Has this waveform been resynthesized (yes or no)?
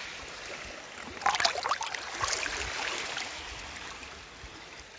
no